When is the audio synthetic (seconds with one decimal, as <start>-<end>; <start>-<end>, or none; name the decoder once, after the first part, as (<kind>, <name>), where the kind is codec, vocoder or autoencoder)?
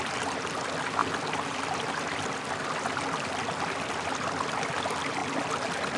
none